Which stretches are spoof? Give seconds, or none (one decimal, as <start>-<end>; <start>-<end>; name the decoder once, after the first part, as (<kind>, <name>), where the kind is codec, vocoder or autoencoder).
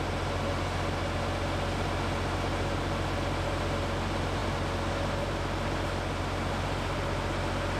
none